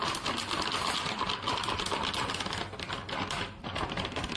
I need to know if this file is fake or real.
real